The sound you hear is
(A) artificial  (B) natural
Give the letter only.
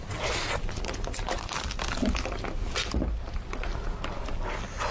B